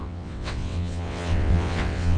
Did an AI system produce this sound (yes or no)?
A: yes